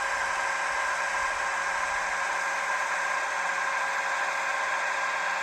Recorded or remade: recorded